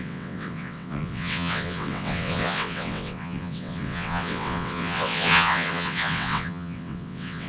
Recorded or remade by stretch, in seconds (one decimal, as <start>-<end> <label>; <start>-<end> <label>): 0.0-7.5 remade